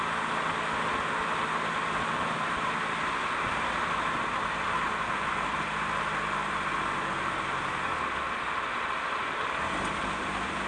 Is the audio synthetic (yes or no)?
no